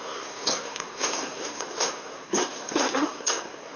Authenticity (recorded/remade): remade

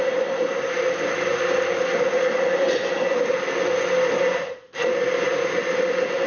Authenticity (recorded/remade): recorded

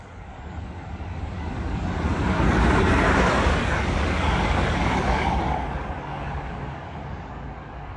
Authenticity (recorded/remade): remade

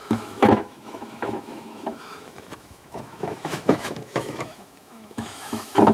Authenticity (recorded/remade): remade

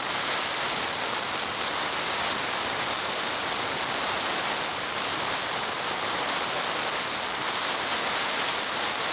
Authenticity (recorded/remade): recorded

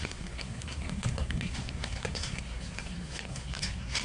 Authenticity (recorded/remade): remade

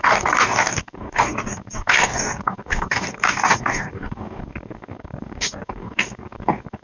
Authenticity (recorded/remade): remade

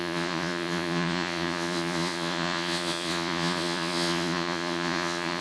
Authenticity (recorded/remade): remade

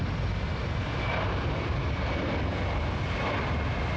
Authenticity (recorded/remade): recorded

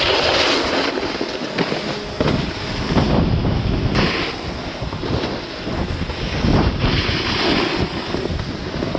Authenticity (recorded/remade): recorded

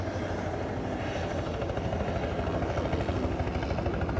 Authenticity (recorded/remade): recorded